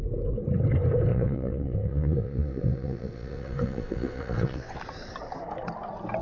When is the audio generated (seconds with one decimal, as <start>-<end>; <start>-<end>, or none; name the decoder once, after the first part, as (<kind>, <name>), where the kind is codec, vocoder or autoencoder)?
1.1-4.8 (vocoder, WaveNeXt)